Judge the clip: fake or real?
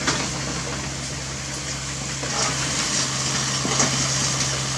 real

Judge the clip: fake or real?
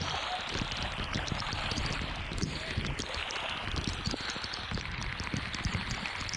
fake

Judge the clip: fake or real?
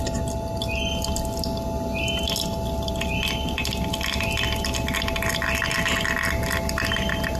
real